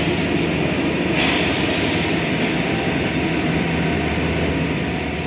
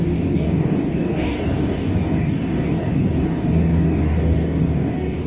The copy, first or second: second